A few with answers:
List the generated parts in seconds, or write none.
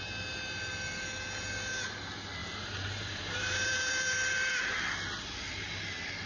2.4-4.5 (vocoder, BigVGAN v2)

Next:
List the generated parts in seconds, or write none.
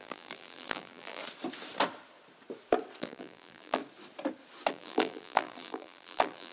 0.0-1.2 (vocoder, BigVGAN v2); 3.0-3.8; 4.7-6.5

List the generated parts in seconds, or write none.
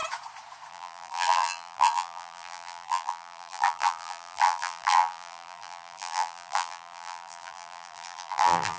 0.7-8.8 (vocoder, BigVGAN v2)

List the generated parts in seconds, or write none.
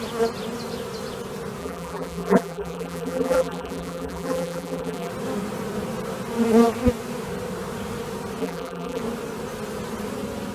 1.6-5.1 (vocoder, BigVGAN v2); 8.4-9.0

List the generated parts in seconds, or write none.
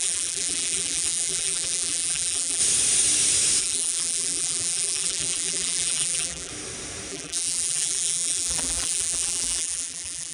0.0-2.6 (vocoder, BigVGAN v2); 3.6-6.5; 7.1-10.3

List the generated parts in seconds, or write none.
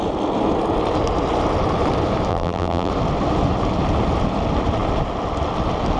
2.3-2.9 (vocoder, BigVGAN v2)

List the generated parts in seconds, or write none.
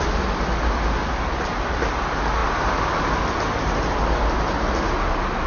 none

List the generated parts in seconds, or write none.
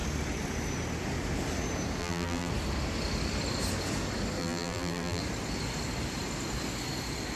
2.0-2.5 (vocoder, BigVGAN v2); 4.4-5.2